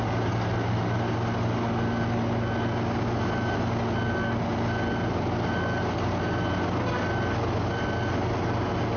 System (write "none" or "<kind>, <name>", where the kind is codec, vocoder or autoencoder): none